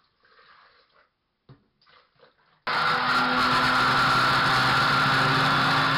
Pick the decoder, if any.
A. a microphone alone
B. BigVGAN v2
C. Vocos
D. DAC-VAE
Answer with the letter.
A